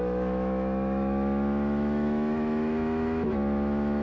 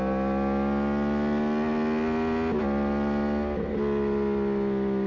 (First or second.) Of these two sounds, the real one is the second